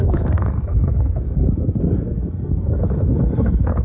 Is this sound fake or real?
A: fake